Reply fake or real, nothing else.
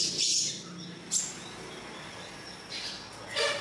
real